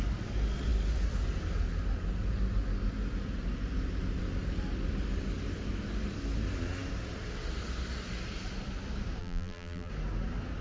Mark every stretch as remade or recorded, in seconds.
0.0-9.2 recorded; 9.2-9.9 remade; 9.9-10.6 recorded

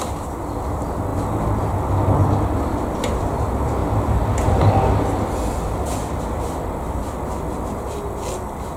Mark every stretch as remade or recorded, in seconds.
0.0-8.8 recorded

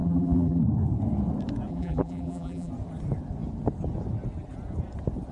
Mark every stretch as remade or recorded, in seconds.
0.0-0.6 remade; 0.6-1.7 recorded; 1.7-2.7 remade; 2.7-5.3 recorded

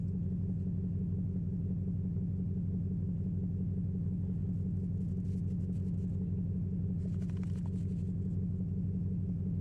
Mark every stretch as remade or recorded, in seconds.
0.0-9.6 recorded